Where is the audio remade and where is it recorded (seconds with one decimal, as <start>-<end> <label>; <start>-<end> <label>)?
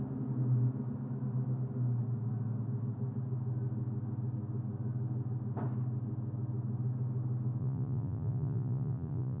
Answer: 0.0-7.6 recorded; 7.6-9.4 remade